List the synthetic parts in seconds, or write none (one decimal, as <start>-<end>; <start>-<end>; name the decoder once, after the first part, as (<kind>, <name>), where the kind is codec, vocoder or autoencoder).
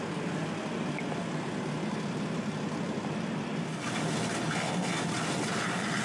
none